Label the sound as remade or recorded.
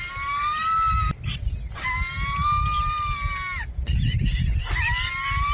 recorded